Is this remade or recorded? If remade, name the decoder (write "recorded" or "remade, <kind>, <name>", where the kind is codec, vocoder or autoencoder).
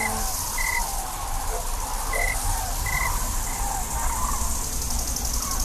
recorded